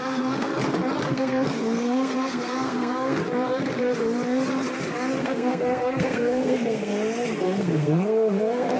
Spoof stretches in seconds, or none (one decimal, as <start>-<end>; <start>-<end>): 0.0-0.5; 1.1-3.2; 5.2-6.9; 7.4-8.8